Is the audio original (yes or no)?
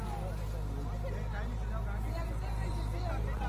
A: yes